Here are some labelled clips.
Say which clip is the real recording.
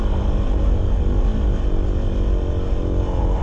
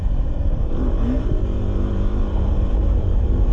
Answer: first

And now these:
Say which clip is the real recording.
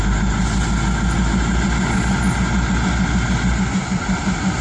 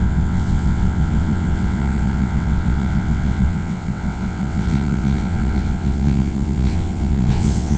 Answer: first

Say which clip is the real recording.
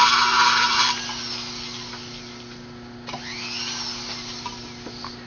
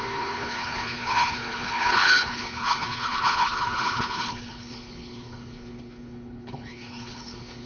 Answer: first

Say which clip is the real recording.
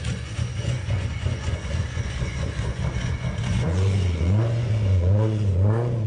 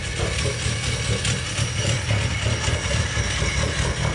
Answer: second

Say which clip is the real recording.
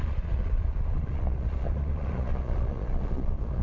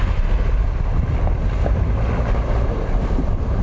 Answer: second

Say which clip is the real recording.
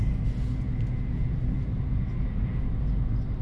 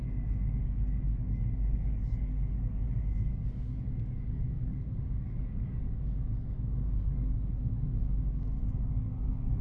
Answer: first